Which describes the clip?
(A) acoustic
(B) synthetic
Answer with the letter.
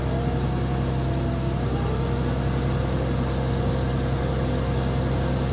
A